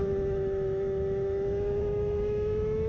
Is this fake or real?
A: fake